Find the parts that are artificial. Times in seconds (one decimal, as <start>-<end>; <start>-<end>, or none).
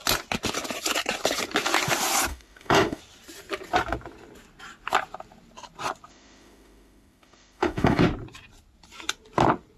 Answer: 2.3-3.0; 6.1-8.0